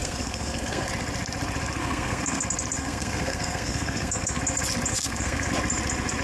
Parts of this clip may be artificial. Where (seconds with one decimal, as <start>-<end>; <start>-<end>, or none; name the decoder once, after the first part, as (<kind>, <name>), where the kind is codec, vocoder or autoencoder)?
0.0-0.9 (codec, SNAC); 1.8-2.4; 2.8-4.4; 4.9-5.5